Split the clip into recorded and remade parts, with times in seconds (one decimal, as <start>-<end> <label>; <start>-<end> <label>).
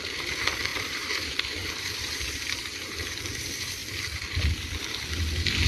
0.0-0.7 recorded; 0.7-3.2 remade; 3.2-5.7 recorded